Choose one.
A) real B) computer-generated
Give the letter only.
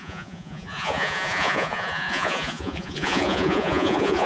B